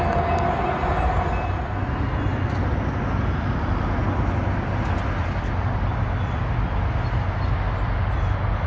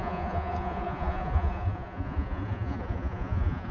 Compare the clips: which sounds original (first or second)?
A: first